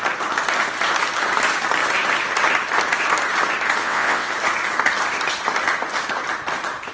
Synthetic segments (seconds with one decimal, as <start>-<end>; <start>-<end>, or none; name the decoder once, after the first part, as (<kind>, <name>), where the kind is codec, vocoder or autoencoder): 3.8-4.3 (vocoder, WaveNeXt)